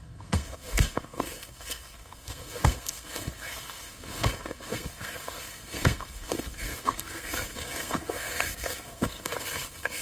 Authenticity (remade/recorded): remade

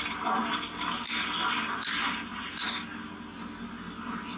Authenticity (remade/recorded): recorded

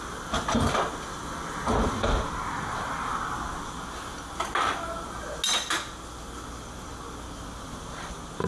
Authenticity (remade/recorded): recorded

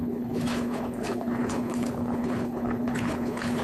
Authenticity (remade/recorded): remade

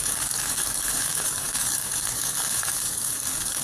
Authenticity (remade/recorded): remade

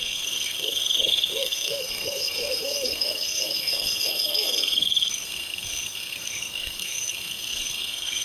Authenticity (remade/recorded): remade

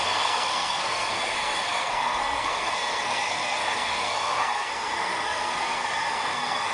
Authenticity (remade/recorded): remade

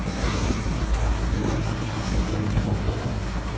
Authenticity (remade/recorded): remade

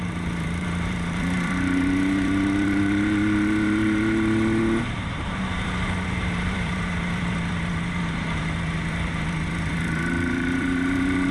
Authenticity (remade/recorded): remade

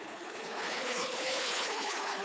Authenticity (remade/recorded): remade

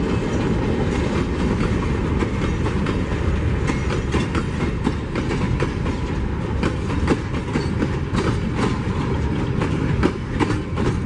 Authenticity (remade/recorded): recorded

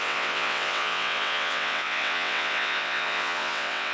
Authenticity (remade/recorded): remade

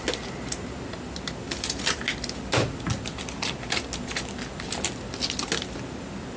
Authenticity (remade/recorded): recorded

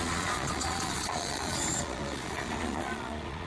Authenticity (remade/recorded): remade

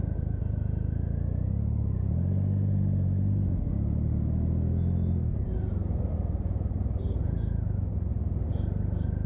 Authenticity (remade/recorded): recorded